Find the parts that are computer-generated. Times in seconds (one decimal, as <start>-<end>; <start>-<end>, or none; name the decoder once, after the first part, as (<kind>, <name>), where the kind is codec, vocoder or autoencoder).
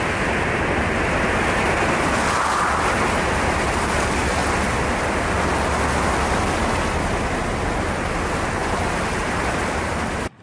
4.4-5.3 (vocoder, BigVGAN v2); 8.6-9.5